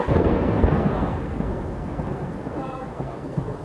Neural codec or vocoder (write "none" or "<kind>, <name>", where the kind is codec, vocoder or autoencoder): codec, SNAC